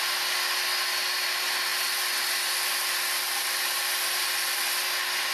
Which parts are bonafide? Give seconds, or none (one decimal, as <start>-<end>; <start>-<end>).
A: 0.0-5.3